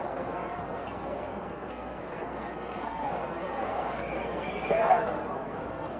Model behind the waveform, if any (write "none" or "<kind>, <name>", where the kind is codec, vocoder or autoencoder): codec, SNAC